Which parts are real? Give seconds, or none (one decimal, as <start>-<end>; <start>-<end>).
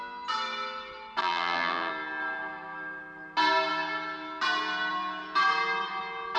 0.0-1.2; 1.9-6.4